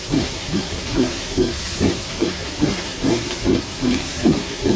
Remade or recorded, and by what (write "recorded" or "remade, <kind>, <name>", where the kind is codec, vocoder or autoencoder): remade, codec, SNAC